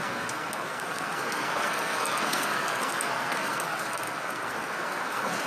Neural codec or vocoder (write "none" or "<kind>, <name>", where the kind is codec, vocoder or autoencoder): codec, SNAC